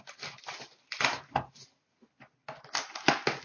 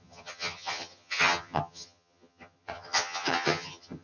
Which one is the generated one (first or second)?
second